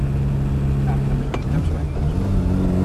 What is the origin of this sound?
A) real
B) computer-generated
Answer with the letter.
A